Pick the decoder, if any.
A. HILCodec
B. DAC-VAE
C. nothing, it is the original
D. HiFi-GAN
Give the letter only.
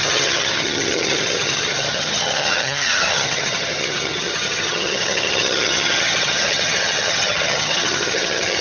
D